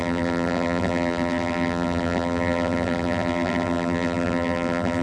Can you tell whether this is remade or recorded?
remade